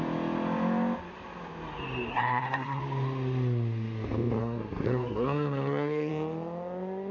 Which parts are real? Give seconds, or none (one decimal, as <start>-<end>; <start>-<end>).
0.0-2.1; 2.8-4.4; 6.1-7.1